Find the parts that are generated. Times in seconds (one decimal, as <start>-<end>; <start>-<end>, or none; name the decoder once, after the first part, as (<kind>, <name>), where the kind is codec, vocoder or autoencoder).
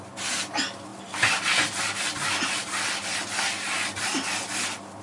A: none